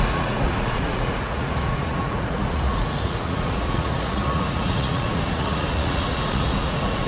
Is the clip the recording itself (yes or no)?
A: no